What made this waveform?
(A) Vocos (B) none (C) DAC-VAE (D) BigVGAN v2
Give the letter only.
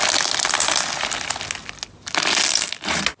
B